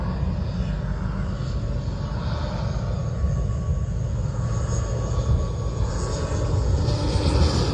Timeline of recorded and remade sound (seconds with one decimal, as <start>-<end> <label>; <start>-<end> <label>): 0.0-7.7 recorded